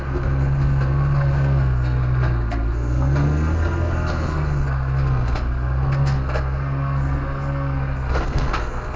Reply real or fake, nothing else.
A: fake